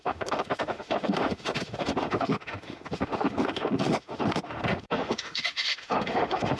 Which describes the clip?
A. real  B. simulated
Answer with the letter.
B